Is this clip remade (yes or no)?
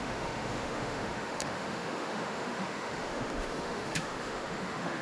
yes